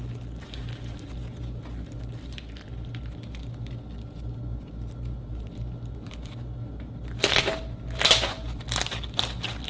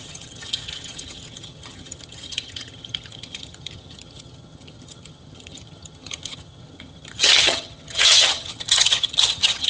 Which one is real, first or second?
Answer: first